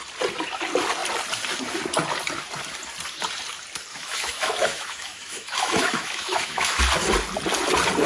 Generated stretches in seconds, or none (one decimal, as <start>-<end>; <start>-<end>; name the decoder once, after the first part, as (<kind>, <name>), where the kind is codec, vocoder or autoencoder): 3.9-6.8 (autoencoder, DAC-VAE)